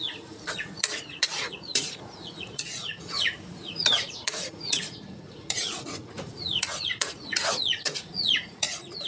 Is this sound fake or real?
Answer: fake